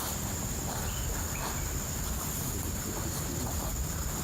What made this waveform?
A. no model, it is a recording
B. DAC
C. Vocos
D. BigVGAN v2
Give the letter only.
A